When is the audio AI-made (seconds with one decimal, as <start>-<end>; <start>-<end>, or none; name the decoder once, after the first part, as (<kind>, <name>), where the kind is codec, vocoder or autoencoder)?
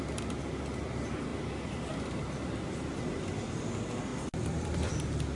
none